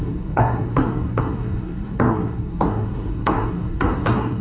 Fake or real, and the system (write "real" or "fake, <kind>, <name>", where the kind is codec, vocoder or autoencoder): fake, codec, SNAC